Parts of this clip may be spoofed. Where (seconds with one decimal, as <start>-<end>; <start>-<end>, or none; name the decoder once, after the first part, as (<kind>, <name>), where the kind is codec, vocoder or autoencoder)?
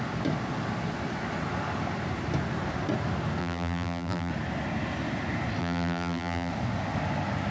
3.4-4.3 (vocoder, BigVGAN v2); 5.6-6.5